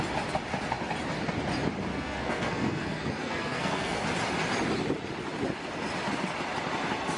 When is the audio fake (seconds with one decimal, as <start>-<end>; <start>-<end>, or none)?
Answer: 1.9-4.0